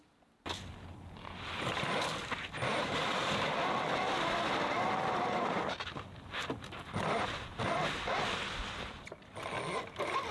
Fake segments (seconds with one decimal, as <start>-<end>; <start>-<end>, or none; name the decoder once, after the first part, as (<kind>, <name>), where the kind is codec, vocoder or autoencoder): none